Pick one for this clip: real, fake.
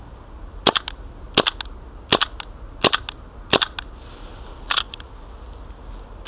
real